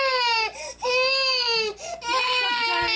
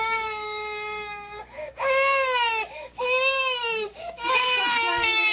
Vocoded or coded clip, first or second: second